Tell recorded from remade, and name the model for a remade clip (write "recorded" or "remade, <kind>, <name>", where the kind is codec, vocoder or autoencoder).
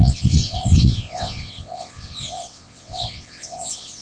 remade, vocoder, WaveNeXt